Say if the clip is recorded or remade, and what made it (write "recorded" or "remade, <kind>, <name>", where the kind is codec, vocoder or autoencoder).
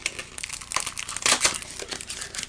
recorded